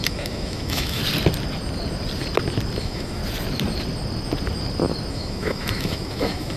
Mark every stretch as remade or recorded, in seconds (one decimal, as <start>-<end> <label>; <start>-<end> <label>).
0.0-1.0 remade; 1.0-2.8 recorded; 2.8-3.2 remade; 3.2-5.1 recorded; 5.1-6.6 remade